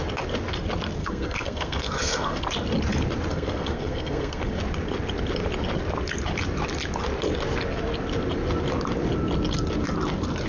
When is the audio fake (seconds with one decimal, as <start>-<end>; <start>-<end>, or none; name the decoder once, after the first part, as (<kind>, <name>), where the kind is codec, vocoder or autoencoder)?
1.0-2.4 (codec, SNAC); 3.3-4.6